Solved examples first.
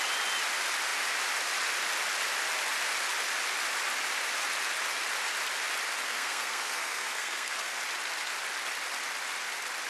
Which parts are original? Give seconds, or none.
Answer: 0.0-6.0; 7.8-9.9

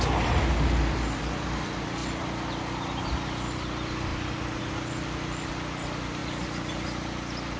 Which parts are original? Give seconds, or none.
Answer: 0.0-7.6

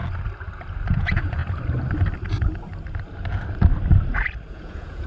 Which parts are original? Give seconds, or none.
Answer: 0.0-0.9; 1.4-4.5

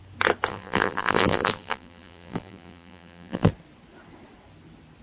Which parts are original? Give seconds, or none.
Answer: 0.0-0.5; 3.5-5.0

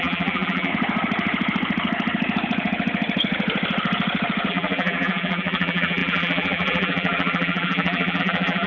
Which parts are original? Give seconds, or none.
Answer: 0.7-4.5

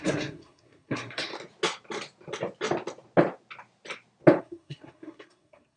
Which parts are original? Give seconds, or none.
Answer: 1.3-4.4

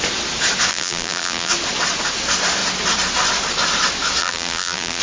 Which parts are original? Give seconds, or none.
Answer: 0.0-0.7; 1.5-4.2

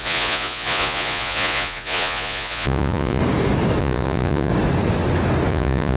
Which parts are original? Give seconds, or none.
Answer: 3.2-3.8; 4.5-5.5